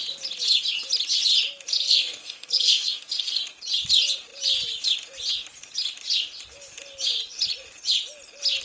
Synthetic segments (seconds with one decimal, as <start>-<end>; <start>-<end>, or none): 1.7-3.4